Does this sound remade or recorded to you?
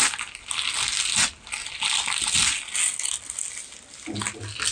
recorded